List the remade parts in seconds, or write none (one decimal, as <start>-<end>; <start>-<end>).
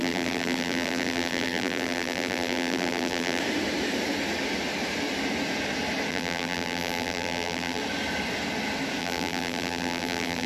0.0-3.4; 6.1-7.8; 9.0-10.5